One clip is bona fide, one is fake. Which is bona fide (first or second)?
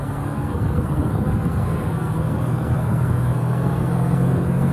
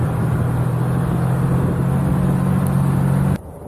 second